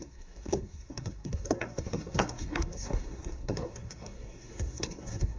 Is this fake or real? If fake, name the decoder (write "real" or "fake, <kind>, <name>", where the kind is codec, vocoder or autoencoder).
fake, codec, SNAC